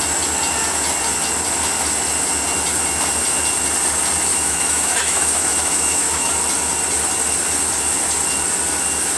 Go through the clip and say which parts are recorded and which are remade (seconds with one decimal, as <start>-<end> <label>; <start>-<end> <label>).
0.0-4.3 recorded; 4.3-6.3 remade; 6.3-9.2 recorded